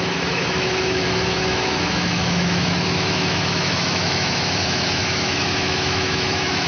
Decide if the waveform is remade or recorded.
remade